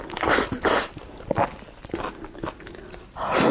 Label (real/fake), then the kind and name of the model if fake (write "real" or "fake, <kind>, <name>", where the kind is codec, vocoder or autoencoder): real